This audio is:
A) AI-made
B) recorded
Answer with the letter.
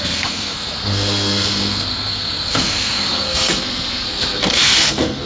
A